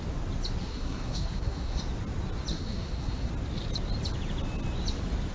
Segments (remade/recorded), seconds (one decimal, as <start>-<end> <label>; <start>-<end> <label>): 0.0-0.6 recorded; 0.6-1.8 remade; 1.8-2.5 recorded; 2.5-3.3 remade; 3.3-5.3 recorded

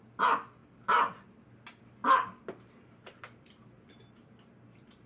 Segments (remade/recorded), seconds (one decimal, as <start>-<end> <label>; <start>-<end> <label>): 0.0-5.1 recorded

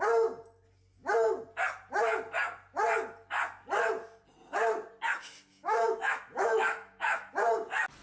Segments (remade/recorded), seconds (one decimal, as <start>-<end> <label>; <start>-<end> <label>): 0.0-5.5 recorded; 5.5-7.3 remade; 7.3-8.0 recorded

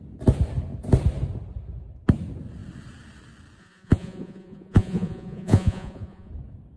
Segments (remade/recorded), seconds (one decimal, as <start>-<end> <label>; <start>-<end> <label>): 0.0-3.6 recorded; 3.6-6.3 remade; 6.3-6.8 recorded

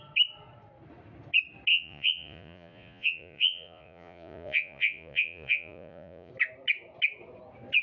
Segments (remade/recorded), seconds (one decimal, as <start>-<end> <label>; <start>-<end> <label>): 0.0-1.7 recorded; 1.7-6.3 remade; 6.3-7.8 recorded

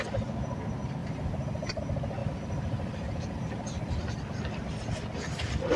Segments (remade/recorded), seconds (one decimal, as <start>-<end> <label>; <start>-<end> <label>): 0.0-1.0 recorded; 1.0-1.8 remade; 1.8-2.2 recorded; 2.2-4.0 remade; 4.0-5.8 recorded

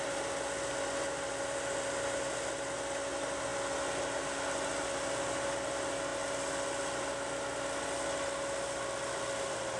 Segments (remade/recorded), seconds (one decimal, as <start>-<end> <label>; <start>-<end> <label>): 0.0-9.8 recorded

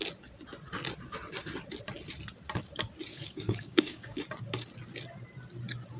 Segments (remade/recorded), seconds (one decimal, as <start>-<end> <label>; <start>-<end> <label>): 0.0-3.1 recorded; 3.1-4.2 remade; 4.2-6.0 recorded